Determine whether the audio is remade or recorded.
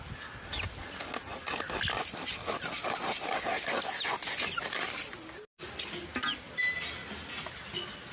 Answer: recorded